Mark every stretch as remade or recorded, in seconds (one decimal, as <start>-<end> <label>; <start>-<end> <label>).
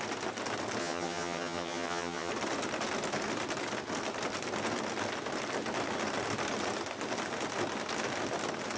0.0-0.8 recorded; 0.8-2.3 remade; 2.3-8.8 recorded